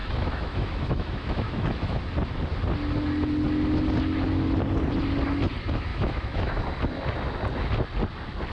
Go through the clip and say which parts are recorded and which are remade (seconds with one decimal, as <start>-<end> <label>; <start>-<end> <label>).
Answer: 0.0-2.0 remade; 2.0-5.9 recorded; 5.9-6.6 remade; 6.6-8.5 recorded